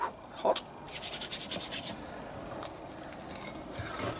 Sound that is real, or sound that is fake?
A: real